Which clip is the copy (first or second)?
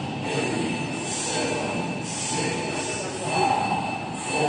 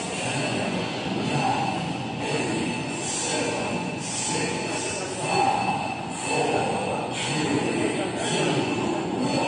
second